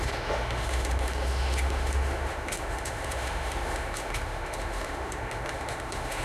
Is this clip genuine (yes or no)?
no